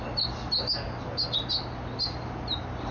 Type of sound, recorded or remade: recorded